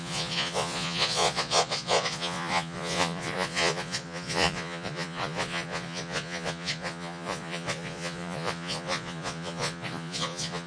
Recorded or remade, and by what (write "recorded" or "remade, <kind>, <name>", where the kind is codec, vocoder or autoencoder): remade, vocoder, Vocos